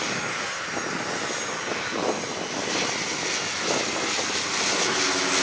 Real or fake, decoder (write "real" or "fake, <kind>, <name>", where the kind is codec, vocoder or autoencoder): real